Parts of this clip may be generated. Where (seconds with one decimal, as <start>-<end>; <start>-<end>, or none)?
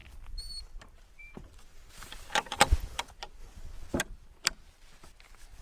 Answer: 0.8-3.4; 4.0-5.6